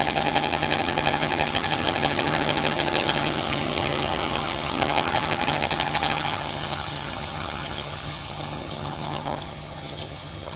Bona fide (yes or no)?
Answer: no